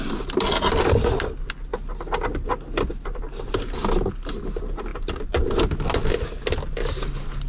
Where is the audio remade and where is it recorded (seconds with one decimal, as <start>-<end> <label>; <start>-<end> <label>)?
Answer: 0.0-7.5 recorded